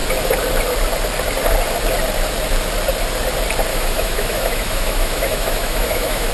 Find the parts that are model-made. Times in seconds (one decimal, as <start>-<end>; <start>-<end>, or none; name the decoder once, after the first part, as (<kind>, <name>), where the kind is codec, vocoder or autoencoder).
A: 3.7-6.3 (autoencoder, DAC-VAE)